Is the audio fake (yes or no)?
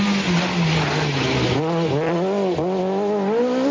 no